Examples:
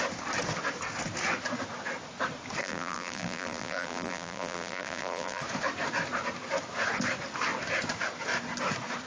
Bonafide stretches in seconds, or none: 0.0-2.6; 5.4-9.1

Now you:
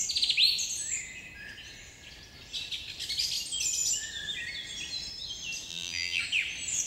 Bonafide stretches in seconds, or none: 0.0-5.7; 6.2-6.9